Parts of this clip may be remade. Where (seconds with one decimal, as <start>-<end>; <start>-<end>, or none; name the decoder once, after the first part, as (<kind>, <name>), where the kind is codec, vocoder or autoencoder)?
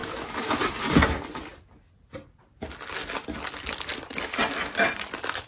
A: 0.0-0.5 (autoencoder, DAC-VAE)